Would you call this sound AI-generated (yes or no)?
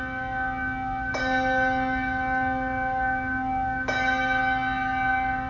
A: no